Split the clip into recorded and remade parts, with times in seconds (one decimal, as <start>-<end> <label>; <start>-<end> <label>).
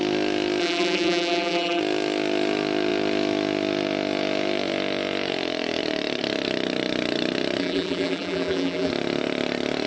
0.0-0.6 recorded; 0.6-1.8 remade; 1.8-7.6 recorded; 7.6-8.9 remade; 8.9-9.9 recorded